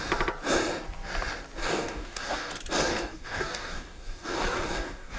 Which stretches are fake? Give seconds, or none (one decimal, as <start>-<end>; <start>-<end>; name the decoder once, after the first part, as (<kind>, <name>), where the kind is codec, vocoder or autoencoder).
1.6-2.5 (codec, DAC); 2.9-5.2